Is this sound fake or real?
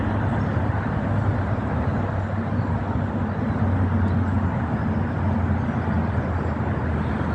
real